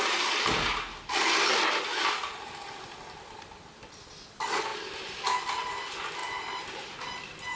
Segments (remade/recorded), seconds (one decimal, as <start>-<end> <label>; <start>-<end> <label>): 0.0-7.6 recorded